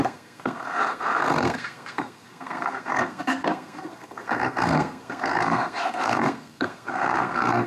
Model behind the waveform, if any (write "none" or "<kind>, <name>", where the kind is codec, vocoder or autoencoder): codec, SNAC